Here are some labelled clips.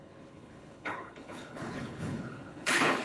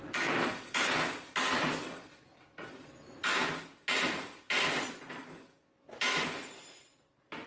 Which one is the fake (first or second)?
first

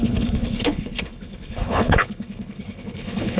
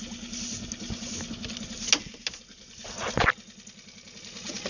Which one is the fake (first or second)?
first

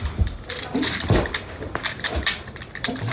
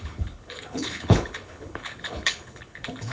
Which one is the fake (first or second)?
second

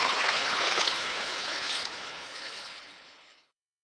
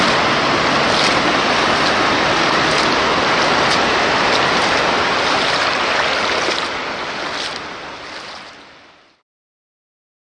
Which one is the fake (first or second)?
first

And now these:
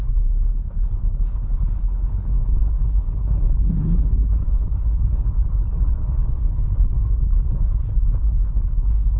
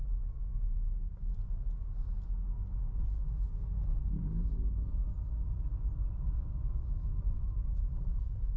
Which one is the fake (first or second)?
first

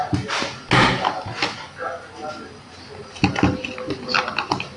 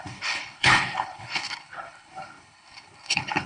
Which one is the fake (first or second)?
second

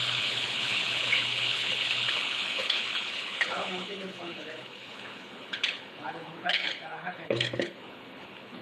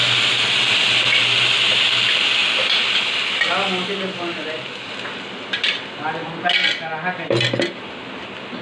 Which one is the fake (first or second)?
first